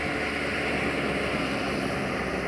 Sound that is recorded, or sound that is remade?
recorded